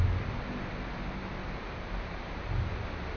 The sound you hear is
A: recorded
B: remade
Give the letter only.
A